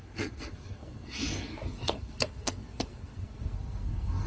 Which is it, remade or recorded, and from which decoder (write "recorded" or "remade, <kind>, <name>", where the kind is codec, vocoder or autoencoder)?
remade, codec, SNAC